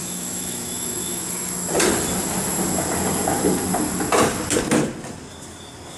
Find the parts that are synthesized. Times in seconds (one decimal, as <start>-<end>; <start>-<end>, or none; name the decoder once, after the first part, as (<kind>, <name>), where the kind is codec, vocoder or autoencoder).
0.0-1.6 (autoencoder, DAC-VAE)